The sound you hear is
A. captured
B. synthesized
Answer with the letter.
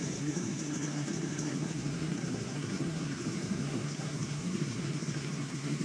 B